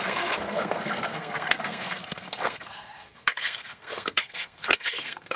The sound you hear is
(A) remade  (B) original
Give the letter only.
A